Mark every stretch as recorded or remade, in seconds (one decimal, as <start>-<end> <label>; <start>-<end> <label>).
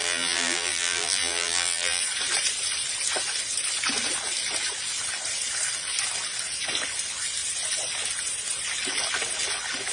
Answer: 0.0-2.0 remade; 2.0-9.9 recorded